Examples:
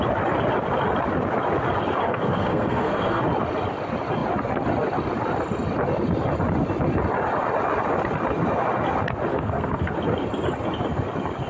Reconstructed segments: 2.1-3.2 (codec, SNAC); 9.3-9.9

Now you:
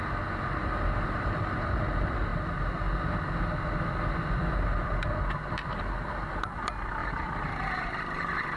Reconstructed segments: none

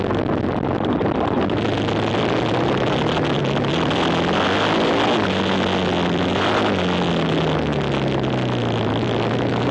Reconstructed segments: none

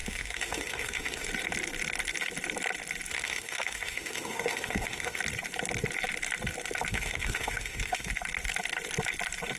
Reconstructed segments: 0.0-1.3 (autoencoder, DAC-VAE); 3.1-5.2; 6.9-8.1